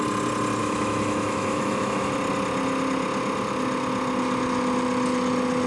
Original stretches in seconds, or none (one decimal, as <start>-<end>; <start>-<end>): 0.0-0.6; 2.1-5.7